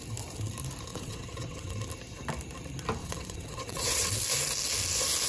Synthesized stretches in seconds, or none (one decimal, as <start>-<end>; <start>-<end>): 0.9-1.7; 3.0-4.1